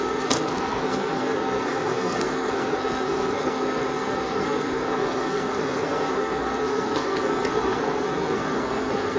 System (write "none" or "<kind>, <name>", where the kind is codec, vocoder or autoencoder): codec, SNAC